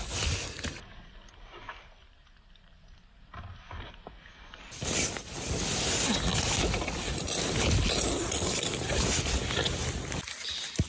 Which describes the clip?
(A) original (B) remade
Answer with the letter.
A